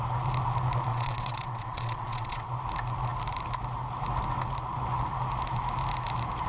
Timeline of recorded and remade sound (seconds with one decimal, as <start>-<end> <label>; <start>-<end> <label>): 0.0-0.9 recorded; 0.9-2.5 remade; 2.5-6.5 recorded